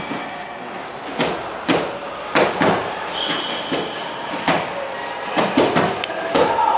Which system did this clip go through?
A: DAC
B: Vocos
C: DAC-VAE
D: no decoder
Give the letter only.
D